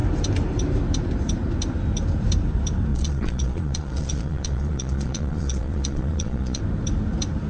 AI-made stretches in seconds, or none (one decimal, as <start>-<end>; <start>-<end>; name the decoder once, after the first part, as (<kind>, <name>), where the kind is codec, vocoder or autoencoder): 2.9-6.6 (vocoder, Vocos)